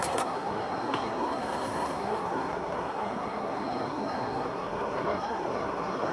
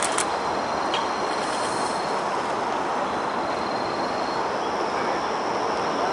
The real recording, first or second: second